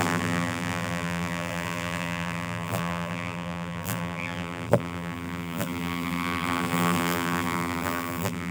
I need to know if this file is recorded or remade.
remade